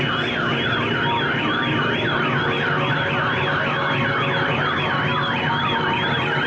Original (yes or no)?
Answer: yes